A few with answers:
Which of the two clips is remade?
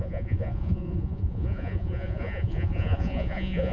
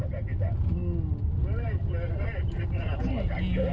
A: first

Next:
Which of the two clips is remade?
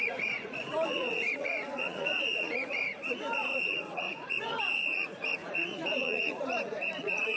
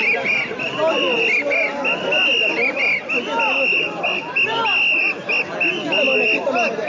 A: first